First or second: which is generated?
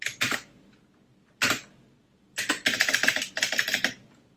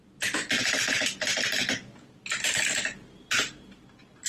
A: first